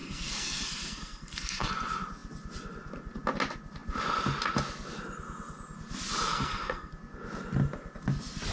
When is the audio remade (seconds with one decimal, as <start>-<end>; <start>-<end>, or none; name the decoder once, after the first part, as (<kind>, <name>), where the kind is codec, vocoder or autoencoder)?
0.0-1.7 (codec, SNAC); 6.3-6.9